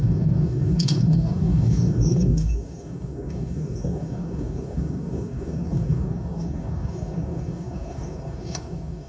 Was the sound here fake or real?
fake